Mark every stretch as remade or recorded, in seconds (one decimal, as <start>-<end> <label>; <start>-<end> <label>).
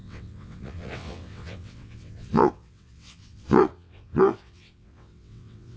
0.0-5.8 remade